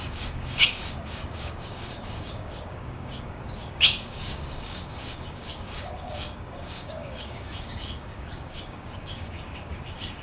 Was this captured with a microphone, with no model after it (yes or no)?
no